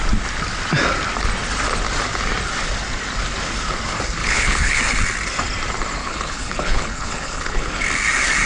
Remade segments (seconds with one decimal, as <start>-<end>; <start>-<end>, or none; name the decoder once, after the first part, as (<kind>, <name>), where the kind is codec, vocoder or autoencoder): 4.2-4.8 (codec, HILCodec); 6.0-7.7